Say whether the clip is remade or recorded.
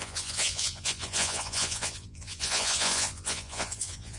remade